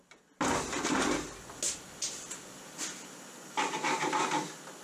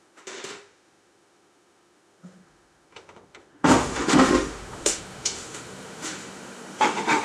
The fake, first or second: second